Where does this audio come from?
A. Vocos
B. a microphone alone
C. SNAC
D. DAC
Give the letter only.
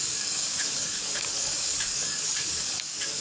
D